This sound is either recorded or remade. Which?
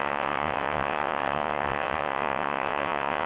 remade